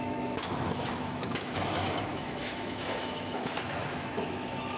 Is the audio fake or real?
fake